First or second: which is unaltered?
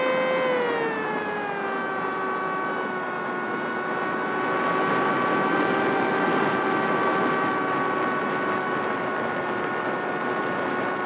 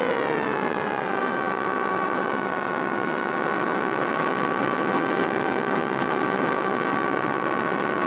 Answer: first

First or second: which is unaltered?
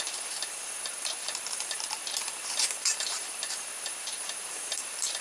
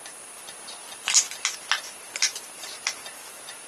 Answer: second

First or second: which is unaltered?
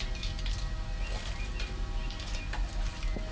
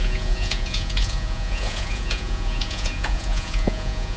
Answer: first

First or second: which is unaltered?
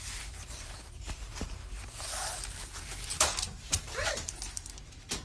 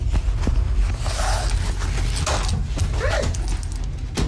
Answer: second